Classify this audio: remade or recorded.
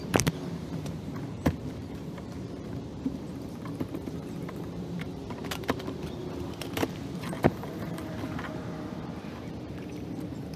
remade